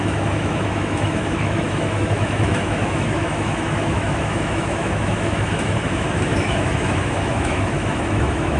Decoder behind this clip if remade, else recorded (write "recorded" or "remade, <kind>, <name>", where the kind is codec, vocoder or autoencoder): remade, autoencoder, DAC-VAE